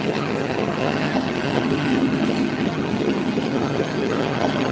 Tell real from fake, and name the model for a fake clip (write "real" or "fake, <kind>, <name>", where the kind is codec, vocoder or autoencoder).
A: fake, vocoder, HiFi-GAN